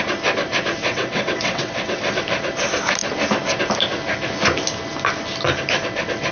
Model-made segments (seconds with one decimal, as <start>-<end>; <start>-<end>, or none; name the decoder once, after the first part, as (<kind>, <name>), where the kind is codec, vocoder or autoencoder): 0.8-2.2 (vocoder, WaveNeXt)